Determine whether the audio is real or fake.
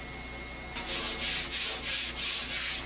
real